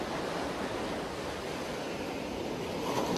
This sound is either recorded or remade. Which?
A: recorded